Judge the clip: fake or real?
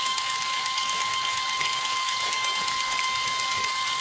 fake